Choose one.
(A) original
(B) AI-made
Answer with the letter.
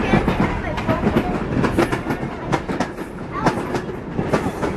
A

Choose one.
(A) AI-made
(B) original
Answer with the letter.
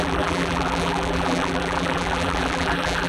A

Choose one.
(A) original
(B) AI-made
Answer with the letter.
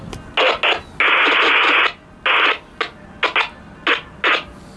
A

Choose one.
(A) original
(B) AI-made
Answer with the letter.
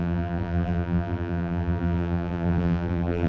B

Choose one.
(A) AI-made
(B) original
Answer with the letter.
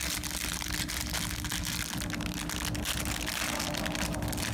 B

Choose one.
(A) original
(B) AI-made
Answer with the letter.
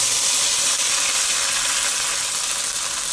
A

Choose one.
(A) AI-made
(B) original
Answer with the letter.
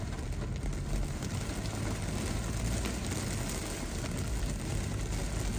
B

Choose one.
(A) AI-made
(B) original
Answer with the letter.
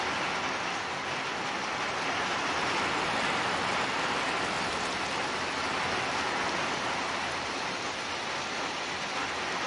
B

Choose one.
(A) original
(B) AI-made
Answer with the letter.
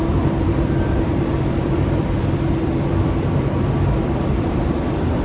B